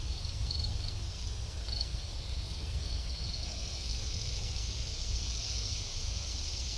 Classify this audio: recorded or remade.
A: remade